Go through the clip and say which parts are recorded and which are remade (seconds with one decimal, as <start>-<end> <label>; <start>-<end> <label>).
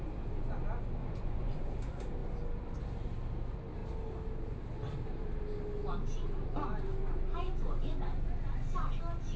0.0-1.0 recorded; 1.0-1.6 remade; 1.6-9.4 recorded